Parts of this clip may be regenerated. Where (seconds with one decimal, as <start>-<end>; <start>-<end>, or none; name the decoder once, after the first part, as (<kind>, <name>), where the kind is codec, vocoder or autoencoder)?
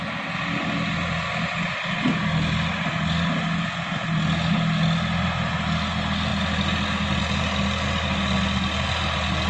none